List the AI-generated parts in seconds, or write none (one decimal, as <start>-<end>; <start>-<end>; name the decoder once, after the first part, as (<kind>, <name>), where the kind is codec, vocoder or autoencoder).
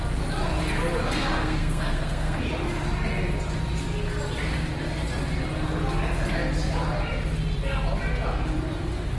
1.4-2.4 (codec, SNAC)